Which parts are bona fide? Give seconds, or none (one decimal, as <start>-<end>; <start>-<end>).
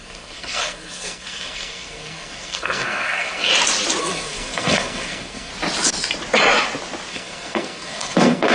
3.5-4.0; 5.5-7.1